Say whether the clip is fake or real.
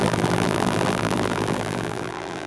fake